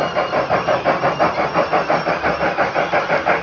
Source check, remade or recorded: recorded